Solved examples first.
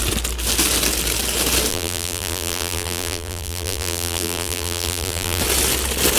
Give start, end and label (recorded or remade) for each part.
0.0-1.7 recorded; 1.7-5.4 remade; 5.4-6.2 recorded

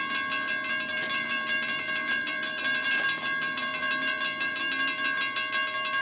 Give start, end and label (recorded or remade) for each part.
0.0-0.9 recorded; 0.9-4.5 remade; 4.5-6.0 recorded

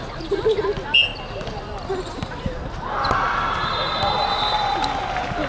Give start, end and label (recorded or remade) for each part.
0.0-5.5 recorded

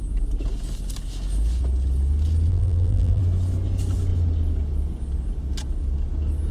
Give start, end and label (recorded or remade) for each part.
0.0-2.5 recorded; 2.5-3.2 remade; 3.2-6.5 recorded

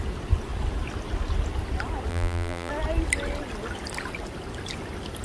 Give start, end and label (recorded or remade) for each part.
0.0-2.1 recorded; 2.1-2.7 remade; 2.7-5.2 recorded

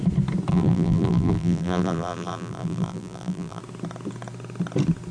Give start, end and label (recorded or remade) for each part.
0.0-0.5 recorded; 0.5-3.6 remade; 3.6-5.1 recorded